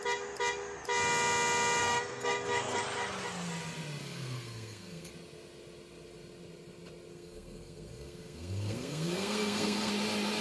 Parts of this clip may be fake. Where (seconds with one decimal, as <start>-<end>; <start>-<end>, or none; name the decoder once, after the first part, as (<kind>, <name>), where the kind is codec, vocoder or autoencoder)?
1.8-2.8 (codec, SNAC); 4.0-5.1; 7.1-9.9